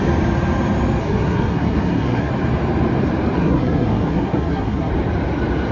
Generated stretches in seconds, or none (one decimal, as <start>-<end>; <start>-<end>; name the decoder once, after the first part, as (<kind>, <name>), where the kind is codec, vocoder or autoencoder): 1.0-2.3 (codec, SNAC); 3.4-4.9